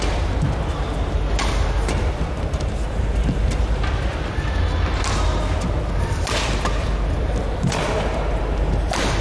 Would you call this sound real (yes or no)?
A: no